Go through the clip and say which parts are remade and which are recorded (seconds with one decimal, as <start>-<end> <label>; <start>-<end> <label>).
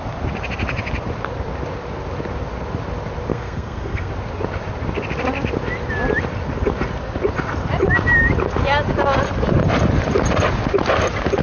0.0-3.3 recorded; 3.3-4.1 remade; 4.1-11.4 recorded